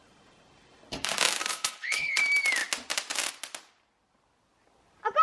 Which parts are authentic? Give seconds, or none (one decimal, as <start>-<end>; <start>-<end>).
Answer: 0.0-1.4; 2.2-5.2